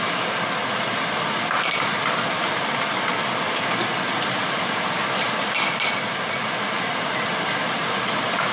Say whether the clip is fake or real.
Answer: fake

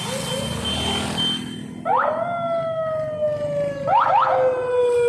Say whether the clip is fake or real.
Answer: real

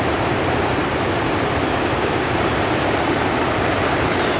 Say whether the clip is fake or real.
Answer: fake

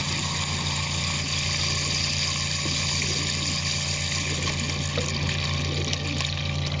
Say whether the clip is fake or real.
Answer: real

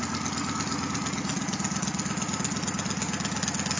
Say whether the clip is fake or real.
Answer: real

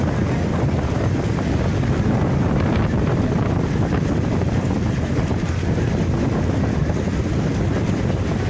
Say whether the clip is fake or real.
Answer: real